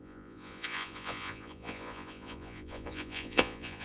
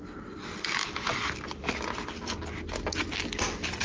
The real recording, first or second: second